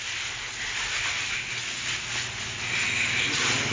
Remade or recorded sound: recorded